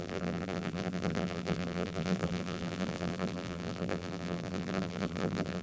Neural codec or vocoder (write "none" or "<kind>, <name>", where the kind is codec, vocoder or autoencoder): vocoder, BigVGAN v2